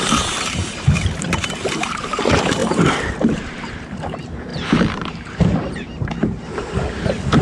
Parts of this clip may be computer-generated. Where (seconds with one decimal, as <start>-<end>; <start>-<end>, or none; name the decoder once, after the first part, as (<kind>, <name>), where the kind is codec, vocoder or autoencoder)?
0.0-7.4 (vocoder, BigVGAN v2)